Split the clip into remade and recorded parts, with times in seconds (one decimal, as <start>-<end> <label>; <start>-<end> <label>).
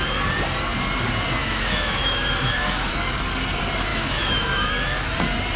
0.0-1.4 recorded; 1.4-2.9 remade; 2.9-3.9 recorded; 3.9-4.7 remade; 4.7-5.6 recorded